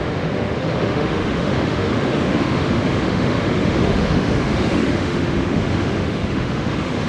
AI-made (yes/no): yes